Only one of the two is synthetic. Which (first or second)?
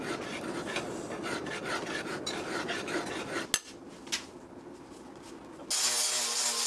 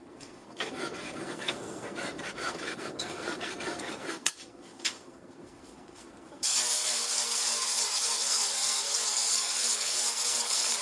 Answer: second